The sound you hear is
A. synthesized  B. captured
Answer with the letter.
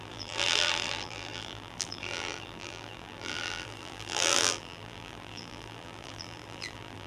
A